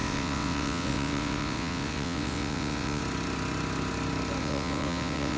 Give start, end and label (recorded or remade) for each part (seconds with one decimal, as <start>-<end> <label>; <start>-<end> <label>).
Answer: 0.0-3.0 remade; 3.0-4.4 recorded; 4.4-5.4 remade